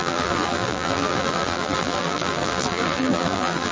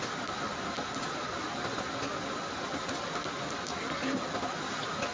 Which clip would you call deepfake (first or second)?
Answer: first